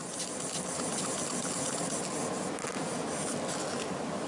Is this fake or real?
real